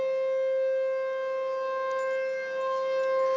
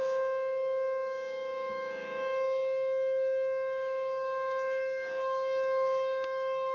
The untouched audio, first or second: first